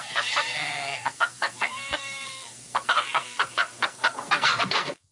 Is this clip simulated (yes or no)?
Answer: yes